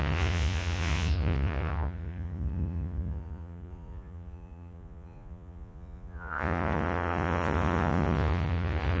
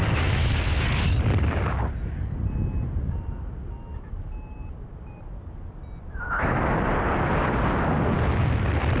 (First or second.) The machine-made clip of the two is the first